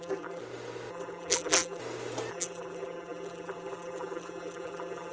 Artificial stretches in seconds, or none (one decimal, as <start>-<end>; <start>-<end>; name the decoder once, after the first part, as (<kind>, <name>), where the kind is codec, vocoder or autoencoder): 0.0-0.4 (vocoder, BigVGAN v2); 0.9-1.8; 2.3-5.1